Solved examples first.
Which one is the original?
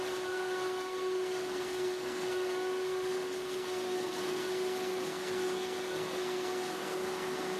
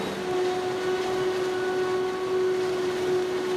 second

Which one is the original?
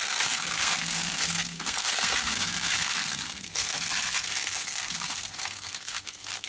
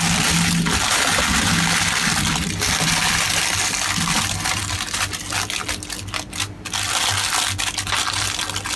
second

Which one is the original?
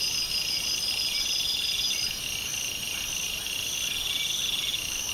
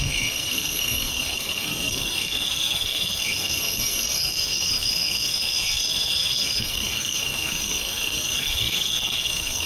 first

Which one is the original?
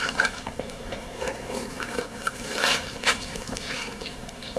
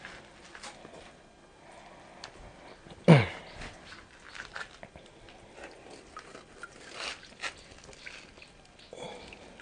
second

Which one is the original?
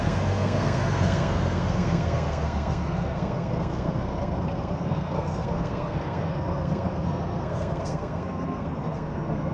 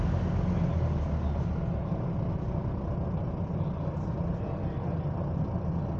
second